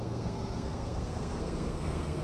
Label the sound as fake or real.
fake